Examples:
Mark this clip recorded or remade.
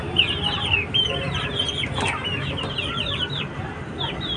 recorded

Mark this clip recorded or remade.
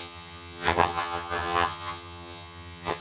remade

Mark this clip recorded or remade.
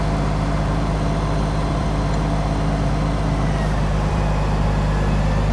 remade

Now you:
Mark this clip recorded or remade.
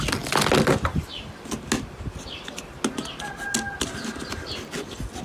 recorded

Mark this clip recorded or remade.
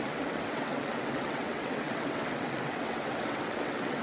remade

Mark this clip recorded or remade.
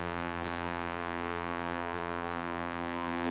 remade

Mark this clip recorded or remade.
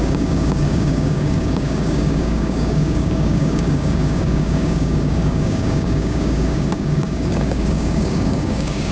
remade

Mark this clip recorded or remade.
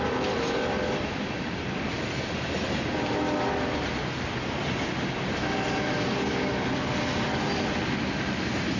recorded